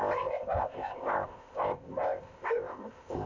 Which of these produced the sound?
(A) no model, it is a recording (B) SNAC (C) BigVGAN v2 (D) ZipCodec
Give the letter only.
D